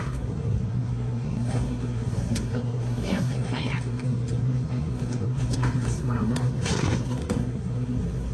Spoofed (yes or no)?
yes